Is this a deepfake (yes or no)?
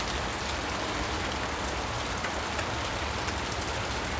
no